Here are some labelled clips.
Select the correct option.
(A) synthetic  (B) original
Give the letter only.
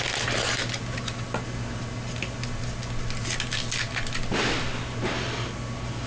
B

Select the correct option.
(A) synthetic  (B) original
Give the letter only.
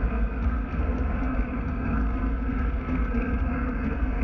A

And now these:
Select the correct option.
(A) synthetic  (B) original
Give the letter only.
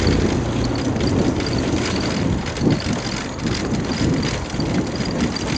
B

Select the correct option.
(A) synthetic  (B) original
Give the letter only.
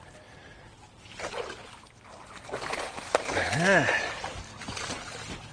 B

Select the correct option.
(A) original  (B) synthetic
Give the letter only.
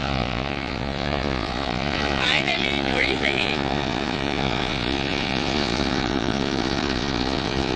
B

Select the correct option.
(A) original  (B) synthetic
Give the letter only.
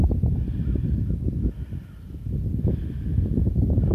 A